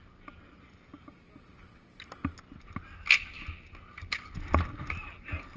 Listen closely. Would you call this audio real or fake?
real